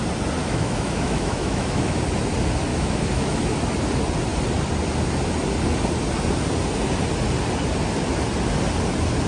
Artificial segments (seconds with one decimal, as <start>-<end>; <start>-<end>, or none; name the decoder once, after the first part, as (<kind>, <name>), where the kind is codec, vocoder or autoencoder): 0.4-2.0 (autoencoder, DAC-VAE); 2.7-3.4